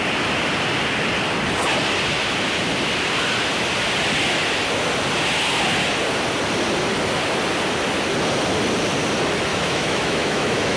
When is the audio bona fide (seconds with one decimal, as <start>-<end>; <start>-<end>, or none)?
0.0-9.5